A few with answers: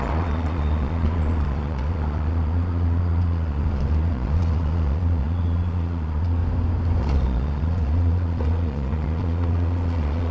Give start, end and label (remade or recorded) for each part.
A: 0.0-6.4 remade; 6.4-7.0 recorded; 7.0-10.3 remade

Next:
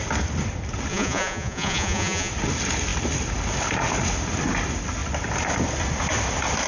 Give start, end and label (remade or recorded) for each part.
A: 0.0-0.9 recorded; 0.9-2.3 remade; 2.3-6.7 recorded

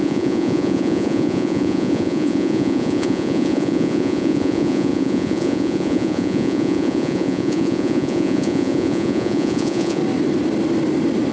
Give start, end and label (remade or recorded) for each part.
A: 0.0-10.0 remade; 10.0-11.3 recorded

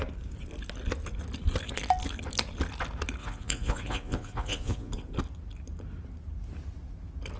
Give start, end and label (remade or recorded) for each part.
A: 0.0-3.2 recorded; 3.2-4.9 remade; 4.9-7.4 recorded

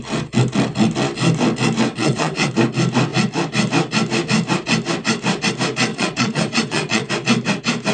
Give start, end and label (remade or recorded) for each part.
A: 0.0-1.9 recorded; 1.9-2.5 remade; 2.5-5.9 recorded; 5.9-7.1 remade; 7.1-7.9 recorded